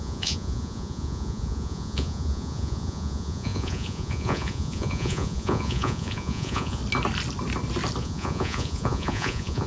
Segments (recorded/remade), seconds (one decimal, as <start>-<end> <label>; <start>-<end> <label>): 0.0-6.8 remade; 6.8-8.0 recorded; 8.0-9.7 remade